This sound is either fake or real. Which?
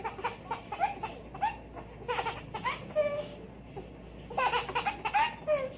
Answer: real